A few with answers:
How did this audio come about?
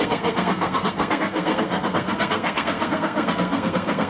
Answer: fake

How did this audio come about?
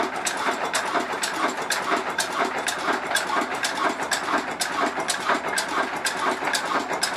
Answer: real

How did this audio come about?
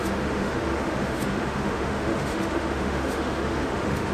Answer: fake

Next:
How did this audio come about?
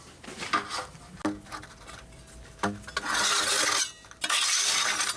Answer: real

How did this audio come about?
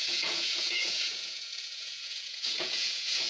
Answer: fake